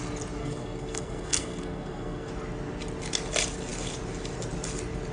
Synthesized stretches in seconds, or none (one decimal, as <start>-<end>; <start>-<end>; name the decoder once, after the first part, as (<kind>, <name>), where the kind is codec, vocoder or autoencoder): 0.4-2.3 (codec, SNAC)